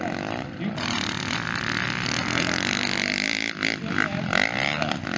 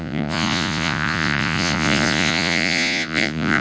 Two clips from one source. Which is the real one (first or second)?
first